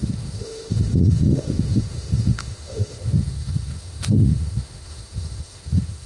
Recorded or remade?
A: remade